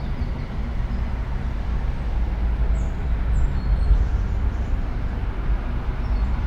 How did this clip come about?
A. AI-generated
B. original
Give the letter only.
B